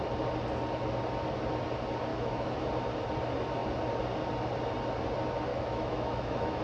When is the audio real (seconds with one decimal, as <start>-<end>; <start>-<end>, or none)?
0.0-2.1; 2.7-5.5